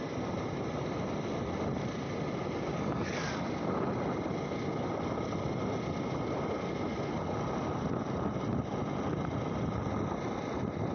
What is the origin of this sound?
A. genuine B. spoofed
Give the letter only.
A